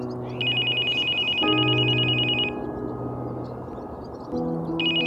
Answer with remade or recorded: recorded